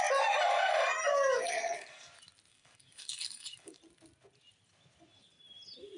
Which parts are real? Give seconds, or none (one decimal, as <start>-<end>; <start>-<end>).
0.0-1.1; 2.1-2.5; 3.8-6.0